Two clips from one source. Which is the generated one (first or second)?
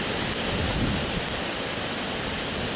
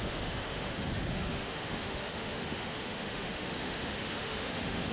second